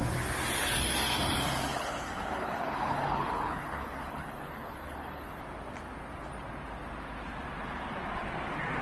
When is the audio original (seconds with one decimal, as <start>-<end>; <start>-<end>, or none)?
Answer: 0.0-1.7; 5.4-8.8

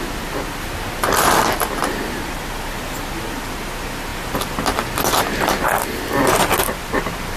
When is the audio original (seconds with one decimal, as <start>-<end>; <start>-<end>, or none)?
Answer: 0.0-7.4

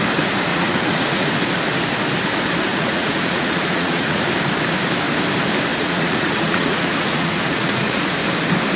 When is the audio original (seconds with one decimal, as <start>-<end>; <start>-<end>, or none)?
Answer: 0.0-0.5; 1.3-2.7; 4.3-5.7; 8.1-8.8

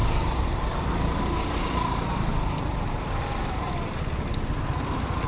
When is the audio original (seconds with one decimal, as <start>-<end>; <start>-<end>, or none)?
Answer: 3.2-5.3

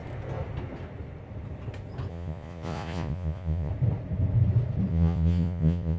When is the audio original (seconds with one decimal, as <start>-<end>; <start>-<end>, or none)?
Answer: 0.0-2.1; 3.7-4.9

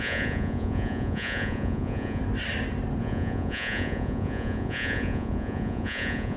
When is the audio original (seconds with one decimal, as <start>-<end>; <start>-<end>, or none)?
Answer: 2.2-3.0

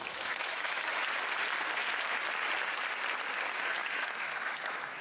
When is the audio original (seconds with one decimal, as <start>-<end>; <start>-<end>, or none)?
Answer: 1.1-3.8